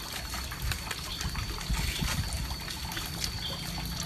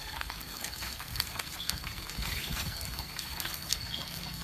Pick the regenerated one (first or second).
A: second